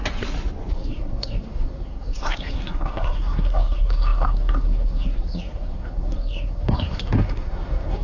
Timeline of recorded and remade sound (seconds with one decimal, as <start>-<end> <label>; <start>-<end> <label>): 0.0-0.7 recorded; 0.7-8.0 remade